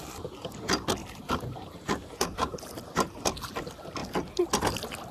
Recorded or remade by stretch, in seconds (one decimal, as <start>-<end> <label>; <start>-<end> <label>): 0.0-1.0 recorded; 1.0-2.9 remade; 2.9-5.1 recorded